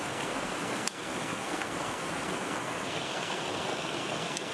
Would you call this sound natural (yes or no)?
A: no